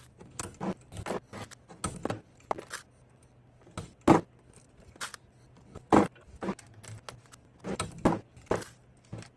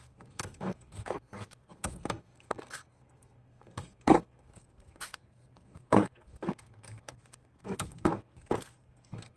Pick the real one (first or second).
first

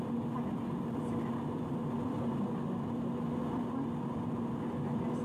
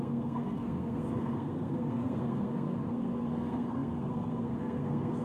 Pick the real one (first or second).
first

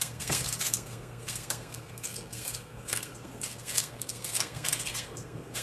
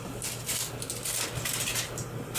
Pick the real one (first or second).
second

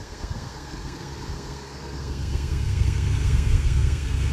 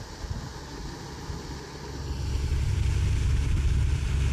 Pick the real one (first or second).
second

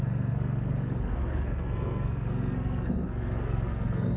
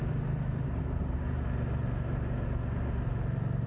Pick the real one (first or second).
second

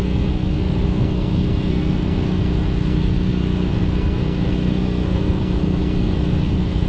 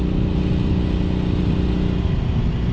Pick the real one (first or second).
second